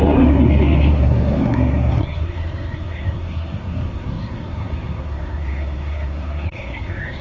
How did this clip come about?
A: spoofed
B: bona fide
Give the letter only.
A